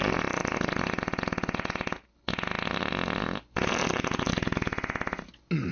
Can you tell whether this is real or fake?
real